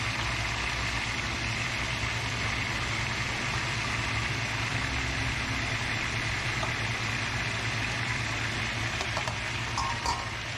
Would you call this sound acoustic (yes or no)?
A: yes